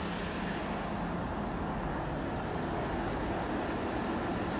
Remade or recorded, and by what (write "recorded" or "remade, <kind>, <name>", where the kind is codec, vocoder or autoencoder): recorded